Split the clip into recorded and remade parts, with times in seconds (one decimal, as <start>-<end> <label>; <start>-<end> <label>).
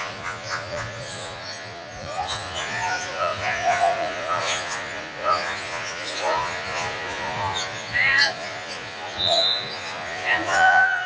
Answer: 0.0-11.1 remade